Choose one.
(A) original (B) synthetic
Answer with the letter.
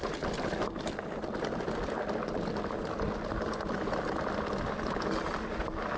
A